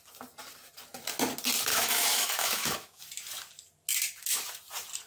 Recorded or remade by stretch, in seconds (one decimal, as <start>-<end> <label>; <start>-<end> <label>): 0.0-1.7 recorded; 1.7-3.0 remade; 3.0-5.1 recorded